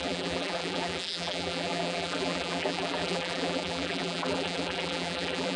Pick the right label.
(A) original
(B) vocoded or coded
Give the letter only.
B